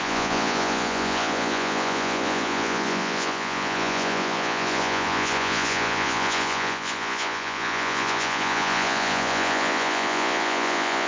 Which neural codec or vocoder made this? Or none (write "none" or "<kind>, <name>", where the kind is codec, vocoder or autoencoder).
vocoder, Vocos